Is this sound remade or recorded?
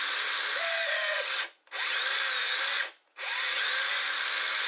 recorded